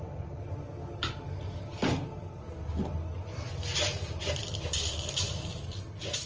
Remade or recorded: recorded